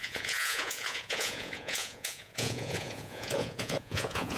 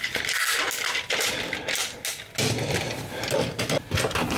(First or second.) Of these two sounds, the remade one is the first